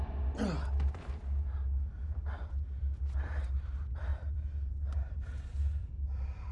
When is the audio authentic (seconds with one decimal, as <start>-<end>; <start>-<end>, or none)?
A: 0.0-4.1; 4.7-6.5